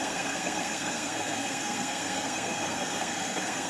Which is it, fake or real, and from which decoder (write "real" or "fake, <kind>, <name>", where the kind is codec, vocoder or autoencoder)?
fake, codec, SNAC